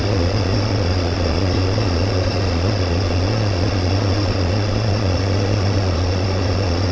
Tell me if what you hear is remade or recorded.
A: remade